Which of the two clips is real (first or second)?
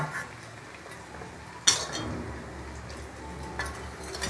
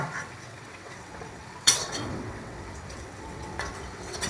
first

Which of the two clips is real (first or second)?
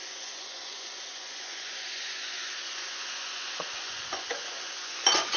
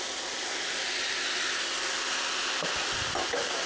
second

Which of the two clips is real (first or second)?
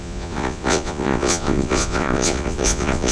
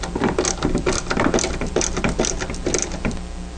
second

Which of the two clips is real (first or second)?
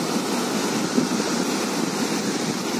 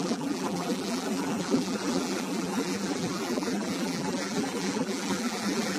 first